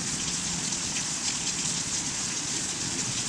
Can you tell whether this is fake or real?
fake